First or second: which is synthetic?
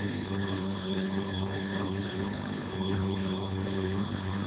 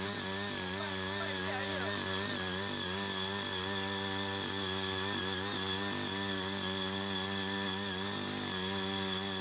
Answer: first